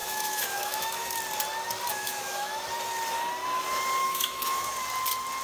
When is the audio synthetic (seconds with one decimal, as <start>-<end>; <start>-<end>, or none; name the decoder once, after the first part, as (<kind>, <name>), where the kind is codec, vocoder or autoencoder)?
0.0-1.2 (autoencoder, DAC-VAE); 1.9-2.6; 4.0-4.7

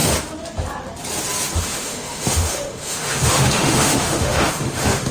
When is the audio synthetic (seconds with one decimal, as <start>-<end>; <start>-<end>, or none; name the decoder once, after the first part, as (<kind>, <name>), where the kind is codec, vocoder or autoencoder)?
1.6-5.1 (autoencoder, DAC-VAE)

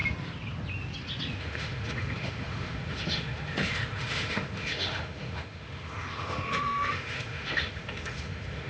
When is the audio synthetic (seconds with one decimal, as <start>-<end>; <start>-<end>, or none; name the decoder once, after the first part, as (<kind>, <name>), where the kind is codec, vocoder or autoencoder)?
1.4-8.7 (autoencoder, DAC-VAE)

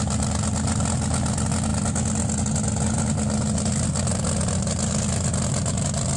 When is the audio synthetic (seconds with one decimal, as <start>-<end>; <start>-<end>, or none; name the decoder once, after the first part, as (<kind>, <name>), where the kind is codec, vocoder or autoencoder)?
none

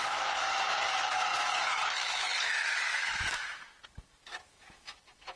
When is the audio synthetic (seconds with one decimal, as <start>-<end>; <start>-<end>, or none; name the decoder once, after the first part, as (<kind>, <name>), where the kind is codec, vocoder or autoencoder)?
0.0-5.4 (autoencoder, DAC-VAE)

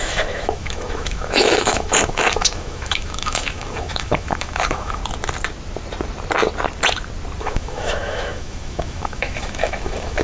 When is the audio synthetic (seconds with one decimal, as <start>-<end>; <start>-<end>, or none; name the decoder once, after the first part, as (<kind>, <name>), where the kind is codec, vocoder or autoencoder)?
0.0-5.0 (autoencoder, DAC-VAE); 7.4-10.2

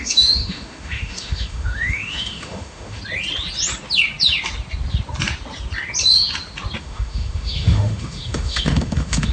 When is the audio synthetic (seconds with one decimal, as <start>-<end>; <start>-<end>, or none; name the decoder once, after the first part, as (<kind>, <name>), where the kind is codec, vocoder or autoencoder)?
0.0-3.0 (autoencoder, DAC-VAE); 6.8-9.3

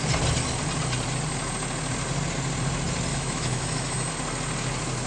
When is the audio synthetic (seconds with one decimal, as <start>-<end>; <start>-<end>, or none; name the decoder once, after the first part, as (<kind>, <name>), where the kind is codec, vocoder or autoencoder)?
3.1-4.1 (autoencoder, DAC-VAE)